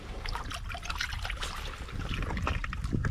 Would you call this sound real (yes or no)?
yes